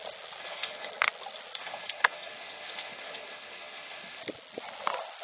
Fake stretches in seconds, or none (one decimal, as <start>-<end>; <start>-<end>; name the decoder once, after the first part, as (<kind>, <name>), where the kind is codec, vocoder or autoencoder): 0.4-0.9 (codec, HILCodec); 1.6-4.2